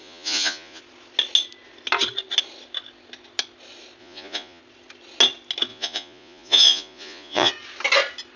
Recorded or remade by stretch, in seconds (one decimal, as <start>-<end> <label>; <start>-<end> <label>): 0.0-0.8 remade; 0.8-4.0 recorded; 4.0-4.6 remade; 4.6-5.7 recorded; 5.7-7.5 remade; 7.5-8.4 recorded

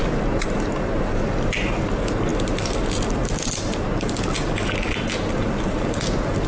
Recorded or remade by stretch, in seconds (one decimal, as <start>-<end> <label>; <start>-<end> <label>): 0.0-6.5 recorded

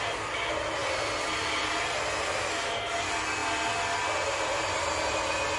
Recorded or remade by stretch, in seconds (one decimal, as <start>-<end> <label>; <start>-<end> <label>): 0.0-5.6 recorded

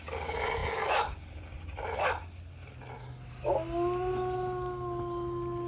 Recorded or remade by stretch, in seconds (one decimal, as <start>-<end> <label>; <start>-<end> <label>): 0.0-5.7 recorded

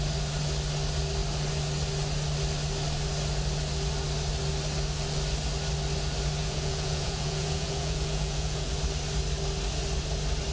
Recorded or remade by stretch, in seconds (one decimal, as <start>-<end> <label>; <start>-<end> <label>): 0.0-6.4 recorded; 6.4-8.7 remade; 8.7-10.5 recorded

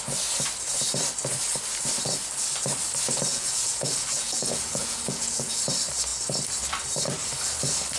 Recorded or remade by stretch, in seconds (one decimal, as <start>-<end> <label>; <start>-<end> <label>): 0.0-3.3 recorded; 3.3-5.6 remade; 5.6-8.0 recorded